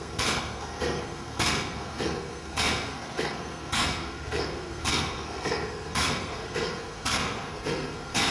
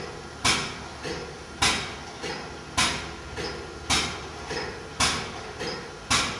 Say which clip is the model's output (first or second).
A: first